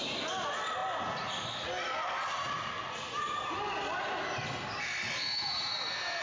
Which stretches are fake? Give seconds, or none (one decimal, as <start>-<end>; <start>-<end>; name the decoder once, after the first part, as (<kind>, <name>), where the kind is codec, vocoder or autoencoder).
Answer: none